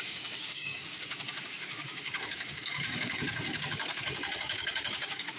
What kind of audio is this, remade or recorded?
remade